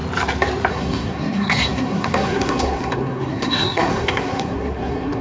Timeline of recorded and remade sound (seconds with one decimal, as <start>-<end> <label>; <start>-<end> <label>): 0.0-0.7 recorded; 0.7-5.2 remade

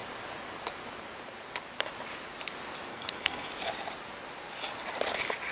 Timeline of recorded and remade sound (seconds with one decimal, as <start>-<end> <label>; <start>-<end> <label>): 0.0-2.9 recorded; 2.9-3.5 remade; 3.5-5.5 recorded

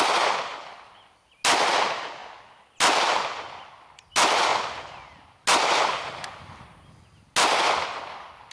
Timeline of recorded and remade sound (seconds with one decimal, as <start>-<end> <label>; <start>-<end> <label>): 0.0-8.5 recorded